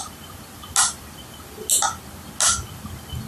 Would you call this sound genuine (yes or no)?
yes